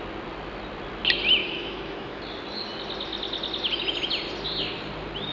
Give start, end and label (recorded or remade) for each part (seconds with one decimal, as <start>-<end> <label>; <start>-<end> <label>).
0.0-1.4 recorded; 1.4-2.2 remade; 2.2-5.3 recorded